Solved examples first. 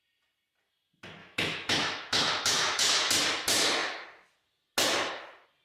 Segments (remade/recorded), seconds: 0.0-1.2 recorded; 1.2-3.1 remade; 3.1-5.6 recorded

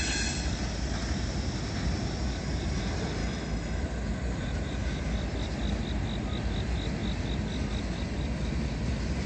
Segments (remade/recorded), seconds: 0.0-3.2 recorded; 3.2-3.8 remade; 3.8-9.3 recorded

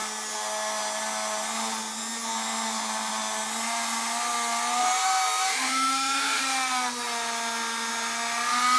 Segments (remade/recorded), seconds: 0.0-4.8 recorded; 4.8-6.4 remade; 6.4-8.8 recorded

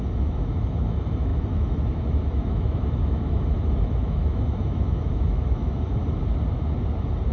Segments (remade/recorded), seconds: 0.0-6.0 remade; 6.0-7.3 recorded

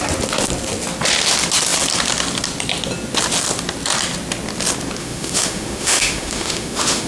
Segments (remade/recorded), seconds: 0.0-5.0 recorded; 5.0-7.1 remade

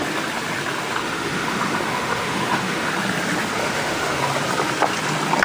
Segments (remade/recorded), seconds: 0.0-1.0 recorded; 1.0-2.9 remade; 2.9-3.6 recorded; 3.6-4.2 remade; 4.2-5.4 recorded